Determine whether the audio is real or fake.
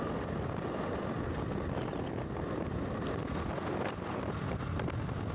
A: real